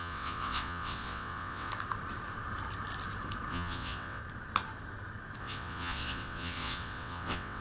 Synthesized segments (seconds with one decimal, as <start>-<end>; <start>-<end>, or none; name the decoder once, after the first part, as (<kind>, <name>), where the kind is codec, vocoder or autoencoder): 0.0-1.7 (vocoder, WaveNeXt); 3.5-4.2; 5.4-7.6

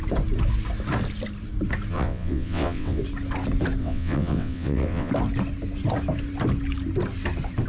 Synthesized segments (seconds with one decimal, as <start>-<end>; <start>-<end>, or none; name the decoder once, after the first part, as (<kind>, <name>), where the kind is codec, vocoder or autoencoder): 1.9-3.0 (vocoder, WaveNeXt); 3.8-5.1

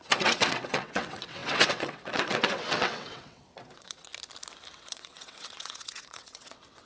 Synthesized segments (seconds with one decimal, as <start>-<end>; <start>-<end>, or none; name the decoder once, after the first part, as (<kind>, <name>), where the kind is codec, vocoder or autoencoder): 0.0-4.1 (vocoder, WaveNeXt); 4.8-6.9